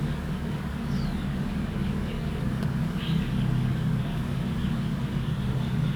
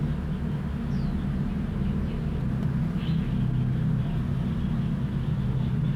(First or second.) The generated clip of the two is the first